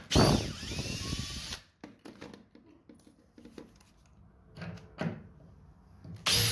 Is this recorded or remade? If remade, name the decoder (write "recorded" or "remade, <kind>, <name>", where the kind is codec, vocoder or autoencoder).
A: recorded